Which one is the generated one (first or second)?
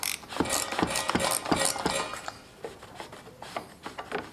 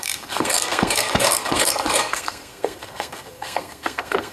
second